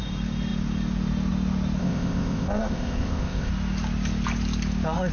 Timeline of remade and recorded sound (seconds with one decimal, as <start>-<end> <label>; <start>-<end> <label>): 0.0-1.8 recorded; 1.8-3.5 remade; 3.5-5.1 recorded